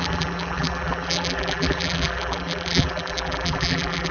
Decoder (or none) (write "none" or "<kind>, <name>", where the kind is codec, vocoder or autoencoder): vocoder, BigVGAN v2